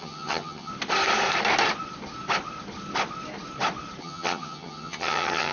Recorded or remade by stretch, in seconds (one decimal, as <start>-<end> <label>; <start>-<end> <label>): 0.0-0.7 remade; 0.7-4.0 recorded; 4.0-5.5 remade